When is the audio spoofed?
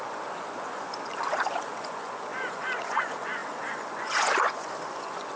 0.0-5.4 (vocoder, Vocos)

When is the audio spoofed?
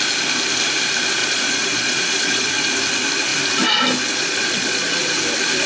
1.2-2.5 (vocoder, Vocos); 4.2-5.1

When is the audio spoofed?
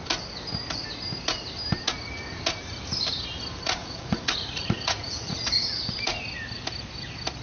3.8-5.4 (vocoder, Vocos)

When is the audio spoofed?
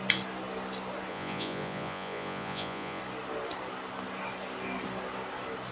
1.1-3.0 (vocoder, Vocos)